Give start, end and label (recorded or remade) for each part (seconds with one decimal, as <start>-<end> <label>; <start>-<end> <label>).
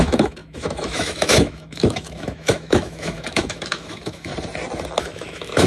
0.0-4.3 remade; 4.3-5.0 recorded; 5.0-5.7 remade